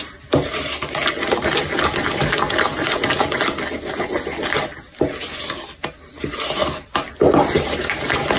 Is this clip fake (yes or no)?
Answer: no